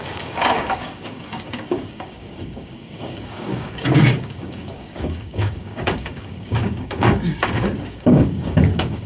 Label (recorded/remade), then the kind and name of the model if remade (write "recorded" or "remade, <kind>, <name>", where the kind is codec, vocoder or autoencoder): remade, codec, DAC